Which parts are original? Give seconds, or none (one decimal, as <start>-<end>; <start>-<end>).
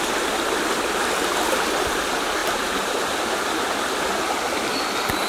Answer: 0.0-2.4; 3.2-5.3